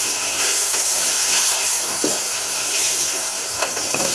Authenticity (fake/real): fake